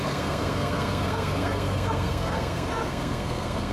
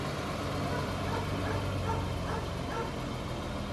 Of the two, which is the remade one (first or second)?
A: first